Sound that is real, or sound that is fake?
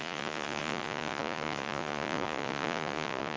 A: fake